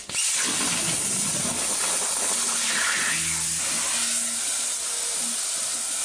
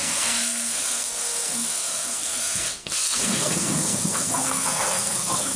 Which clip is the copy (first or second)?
second